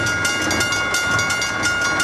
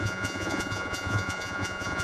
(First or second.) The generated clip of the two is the second